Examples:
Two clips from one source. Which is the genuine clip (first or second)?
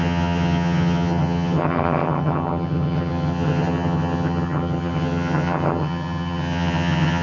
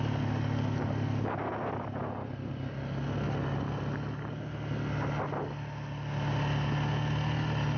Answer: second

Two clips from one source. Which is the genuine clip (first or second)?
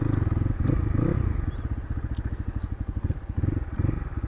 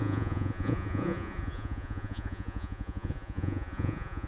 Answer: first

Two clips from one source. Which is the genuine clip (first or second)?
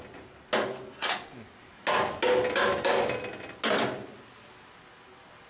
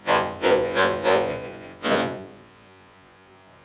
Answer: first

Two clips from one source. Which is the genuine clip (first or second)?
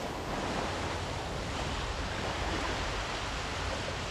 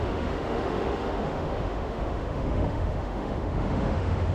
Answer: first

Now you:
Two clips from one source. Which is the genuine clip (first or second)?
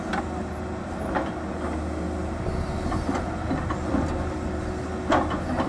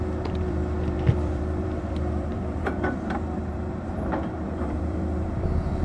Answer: first